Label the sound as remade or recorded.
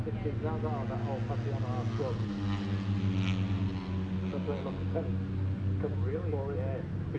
recorded